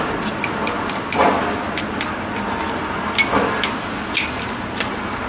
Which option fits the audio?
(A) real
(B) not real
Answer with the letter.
A